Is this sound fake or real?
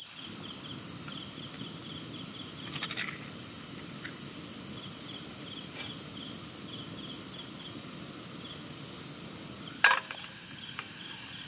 real